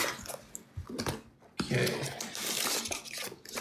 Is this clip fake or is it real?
real